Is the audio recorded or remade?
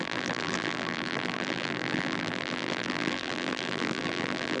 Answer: remade